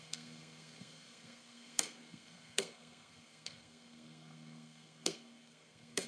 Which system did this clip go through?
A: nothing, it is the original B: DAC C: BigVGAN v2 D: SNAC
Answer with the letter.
D